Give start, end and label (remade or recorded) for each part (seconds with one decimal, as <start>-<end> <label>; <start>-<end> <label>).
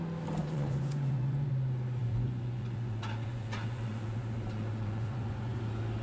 0.0-0.4 recorded; 0.4-1.5 remade; 1.5-2.0 recorded; 2.0-5.6 remade; 5.6-6.0 recorded